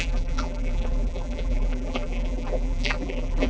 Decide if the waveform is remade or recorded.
remade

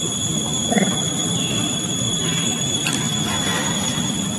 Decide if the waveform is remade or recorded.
recorded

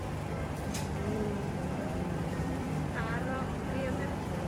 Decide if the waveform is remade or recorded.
remade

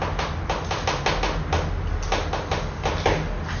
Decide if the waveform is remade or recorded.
recorded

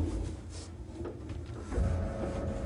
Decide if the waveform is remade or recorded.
recorded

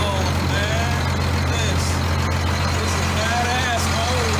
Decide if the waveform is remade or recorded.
recorded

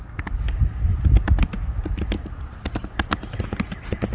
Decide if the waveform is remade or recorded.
recorded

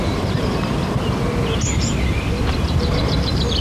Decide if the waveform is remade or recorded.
remade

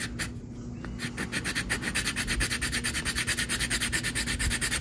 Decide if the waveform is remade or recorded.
recorded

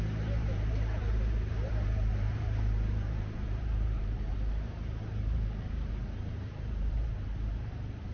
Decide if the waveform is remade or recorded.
remade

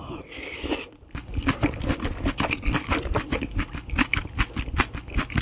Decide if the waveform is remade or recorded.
remade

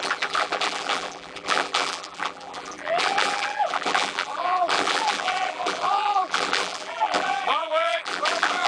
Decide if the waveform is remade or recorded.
remade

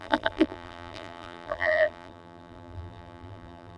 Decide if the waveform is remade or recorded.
remade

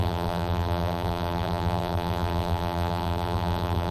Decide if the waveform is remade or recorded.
remade